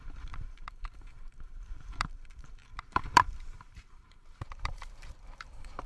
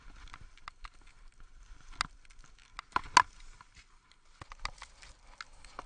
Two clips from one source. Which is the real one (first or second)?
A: second